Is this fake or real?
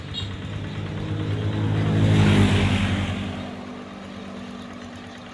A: real